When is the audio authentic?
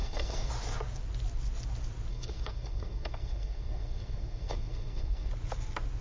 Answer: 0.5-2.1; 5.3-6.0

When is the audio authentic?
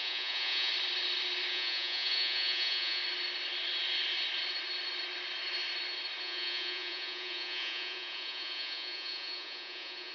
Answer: 0.7-1.5; 3.0-6.2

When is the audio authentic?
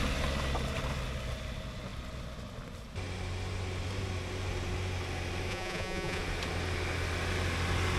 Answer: 0.0-5.5; 6.2-8.0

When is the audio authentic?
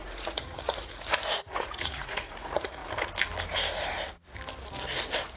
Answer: 2.8-5.4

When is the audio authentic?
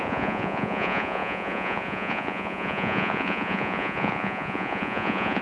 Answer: none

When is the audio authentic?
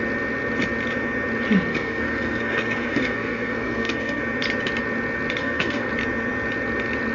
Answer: 0.0-1.7; 4.2-5.4; 5.9-7.1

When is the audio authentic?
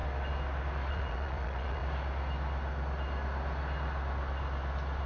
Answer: 0.0-0.9; 1.8-5.1